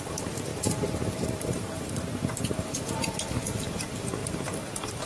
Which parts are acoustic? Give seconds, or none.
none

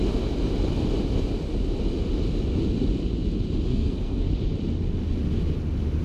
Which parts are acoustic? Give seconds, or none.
0.0-3.7; 4.2-6.0

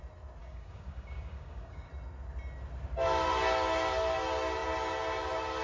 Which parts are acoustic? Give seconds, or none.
0.0-0.4; 1.9-5.6